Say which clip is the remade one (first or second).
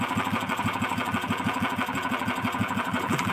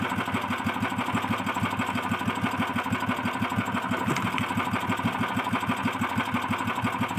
first